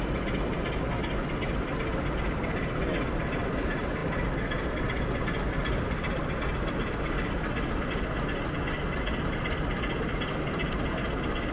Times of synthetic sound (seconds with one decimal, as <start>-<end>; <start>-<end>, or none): none

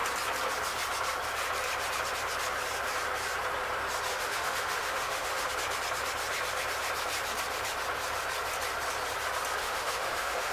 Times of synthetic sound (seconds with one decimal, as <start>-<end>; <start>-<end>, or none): 4.1-5.5; 9.6-10.5

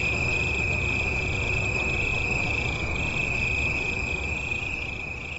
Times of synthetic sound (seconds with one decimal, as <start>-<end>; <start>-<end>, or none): 0.6-2.1

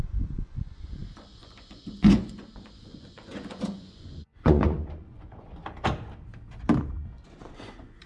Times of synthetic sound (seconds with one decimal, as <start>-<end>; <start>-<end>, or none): 0.0-5.6; 6.8-8.1

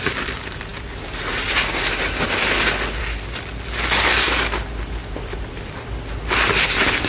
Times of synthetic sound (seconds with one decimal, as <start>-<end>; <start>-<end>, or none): none

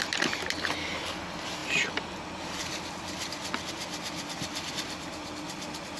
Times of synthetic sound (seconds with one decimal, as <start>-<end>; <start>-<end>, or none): none